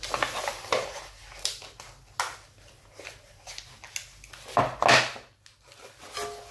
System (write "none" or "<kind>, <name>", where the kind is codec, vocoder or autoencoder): none